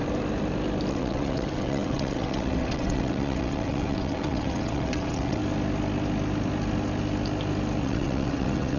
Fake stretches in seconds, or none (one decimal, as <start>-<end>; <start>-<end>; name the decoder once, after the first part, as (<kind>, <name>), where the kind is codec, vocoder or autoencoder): 0.9-5.4 (vocoder, WaveNeXt); 7.8-8.8